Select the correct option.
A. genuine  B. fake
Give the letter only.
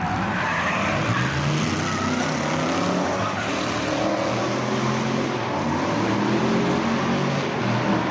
A